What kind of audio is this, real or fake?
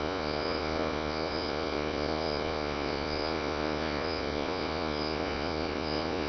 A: fake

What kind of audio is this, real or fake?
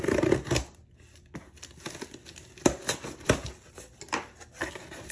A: real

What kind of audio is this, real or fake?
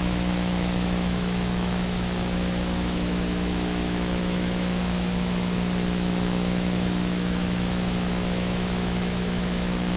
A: fake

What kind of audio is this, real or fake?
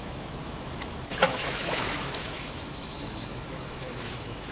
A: fake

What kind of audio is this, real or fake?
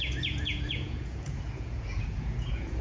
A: fake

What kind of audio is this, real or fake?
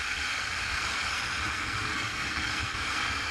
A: fake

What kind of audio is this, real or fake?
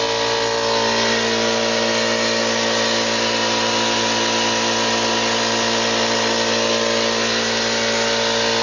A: real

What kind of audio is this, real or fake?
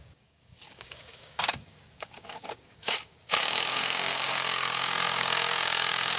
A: fake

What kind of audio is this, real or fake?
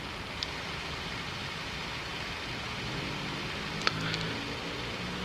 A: real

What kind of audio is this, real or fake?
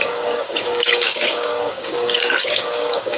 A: fake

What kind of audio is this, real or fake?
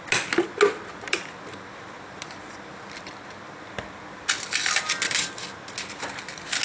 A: real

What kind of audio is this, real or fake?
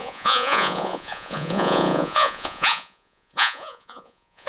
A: fake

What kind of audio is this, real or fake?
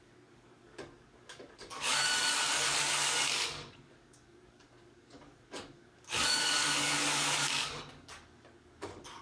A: fake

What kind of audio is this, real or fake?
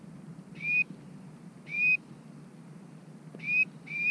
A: real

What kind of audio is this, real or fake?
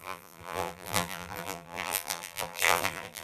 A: fake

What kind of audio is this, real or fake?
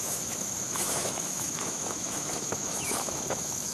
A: fake